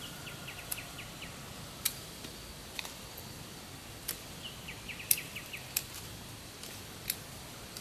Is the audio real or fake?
real